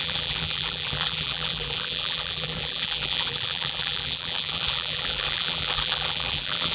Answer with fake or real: fake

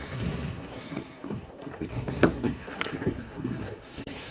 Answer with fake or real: fake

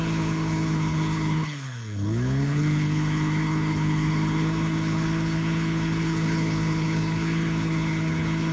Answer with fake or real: fake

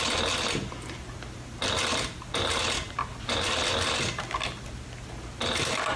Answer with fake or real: real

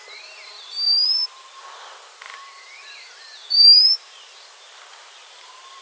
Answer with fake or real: fake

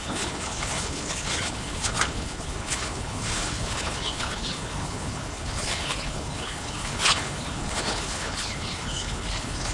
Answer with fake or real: fake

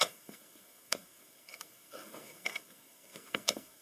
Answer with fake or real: fake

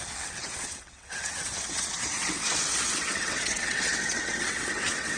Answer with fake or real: fake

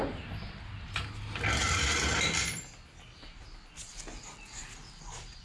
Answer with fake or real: real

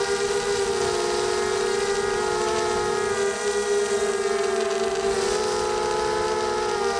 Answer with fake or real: real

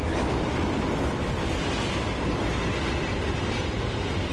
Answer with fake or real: real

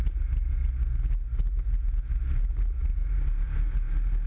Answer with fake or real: real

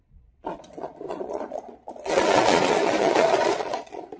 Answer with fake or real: fake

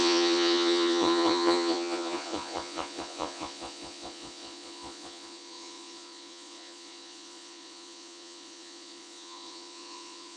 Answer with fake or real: fake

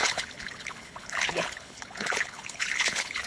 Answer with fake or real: fake